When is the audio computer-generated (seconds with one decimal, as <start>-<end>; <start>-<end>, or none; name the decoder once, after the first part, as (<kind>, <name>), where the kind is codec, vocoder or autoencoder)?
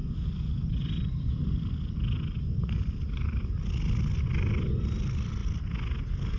none